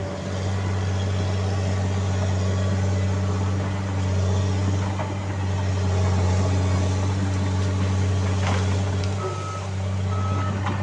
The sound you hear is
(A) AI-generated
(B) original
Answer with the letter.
B